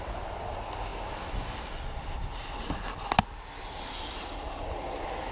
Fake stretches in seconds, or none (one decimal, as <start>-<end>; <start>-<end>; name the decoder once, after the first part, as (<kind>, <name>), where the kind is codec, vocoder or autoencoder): none